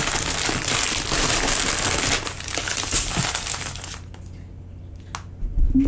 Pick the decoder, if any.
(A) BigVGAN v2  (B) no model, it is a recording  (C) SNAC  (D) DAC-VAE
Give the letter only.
B